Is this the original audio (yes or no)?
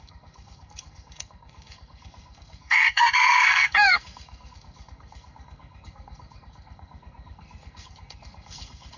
no